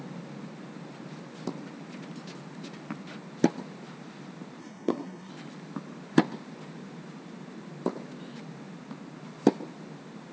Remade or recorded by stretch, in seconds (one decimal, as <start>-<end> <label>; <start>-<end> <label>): 0.0-4.6 recorded; 4.6-5.3 remade; 5.3-10.3 recorded